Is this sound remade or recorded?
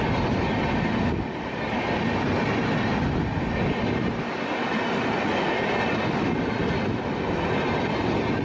recorded